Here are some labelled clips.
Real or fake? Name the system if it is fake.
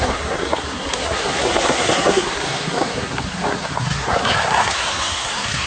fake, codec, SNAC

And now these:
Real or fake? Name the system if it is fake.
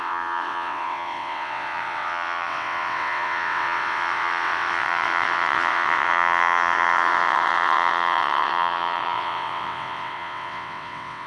fake, vocoder, WaveNeXt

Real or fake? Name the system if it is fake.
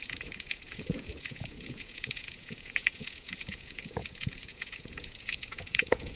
fake, vocoder, Vocos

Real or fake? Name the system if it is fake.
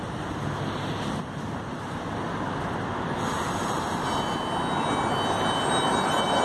real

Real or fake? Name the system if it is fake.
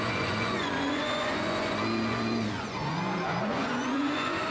fake, vocoder, Vocos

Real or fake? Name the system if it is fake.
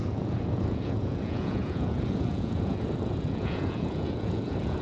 fake, vocoder, Vocos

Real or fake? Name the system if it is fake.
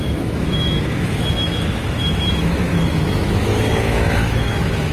fake, autoencoder, DAC-VAE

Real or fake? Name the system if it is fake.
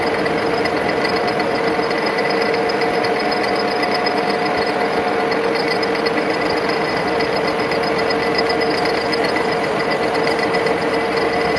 real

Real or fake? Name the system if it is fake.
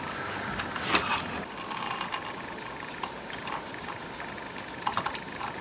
real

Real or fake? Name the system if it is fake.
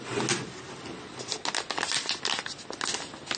real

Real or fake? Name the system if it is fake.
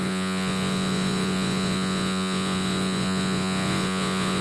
fake, vocoder, Vocos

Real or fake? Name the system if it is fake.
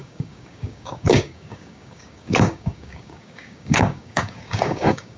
fake, codec, DAC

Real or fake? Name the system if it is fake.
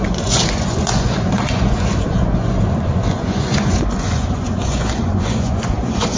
fake, vocoder, Vocos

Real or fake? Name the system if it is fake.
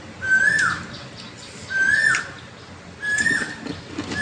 real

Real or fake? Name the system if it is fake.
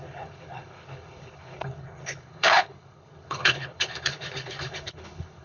fake, codec, HILCodec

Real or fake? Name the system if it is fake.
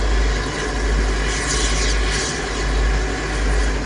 real